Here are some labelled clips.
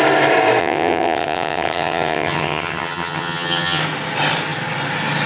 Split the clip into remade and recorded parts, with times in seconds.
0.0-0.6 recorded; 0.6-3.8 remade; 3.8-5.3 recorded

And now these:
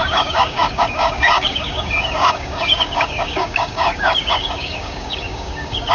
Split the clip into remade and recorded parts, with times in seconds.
0.0-5.9 remade

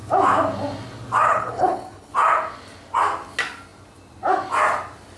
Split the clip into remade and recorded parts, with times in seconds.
0.0-1.3 recorded; 1.3-2.1 remade; 2.1-5.2 recorded

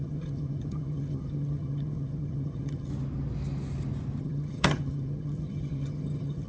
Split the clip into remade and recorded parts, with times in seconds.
0.0-2.9 remade; 2.9-4.2 recorded; 4.2-6.5 remade

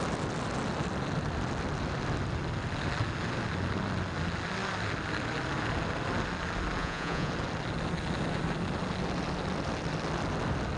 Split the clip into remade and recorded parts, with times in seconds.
0.0-6.8 recorded; 6.8-7.3 remade; 7.3-10.8 recorded

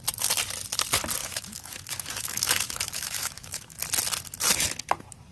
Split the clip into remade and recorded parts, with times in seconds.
0.0-1.2 recorded; 1.2-3.8 remade; 3.8-5.3 recorded

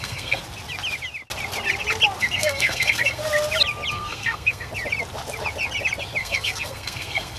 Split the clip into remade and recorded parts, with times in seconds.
0.0-0.4 remade; 0.4-2.2 recorded; 2.2-3.2 remade; 3.2-3.9 recorded; 3.9-4.7 remade; 4.7-6.2 recorded; 6.2-7.4 remade

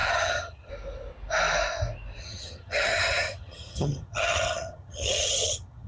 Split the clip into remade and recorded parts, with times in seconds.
0.0-0.7 remade; 0.7-2.2 recorded; 2.2-5.9 remade